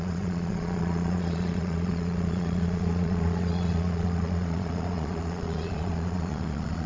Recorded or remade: remade